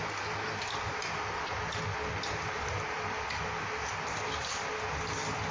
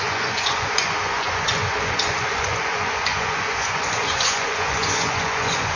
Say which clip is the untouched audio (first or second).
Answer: first